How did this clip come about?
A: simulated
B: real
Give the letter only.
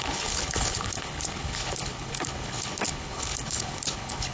A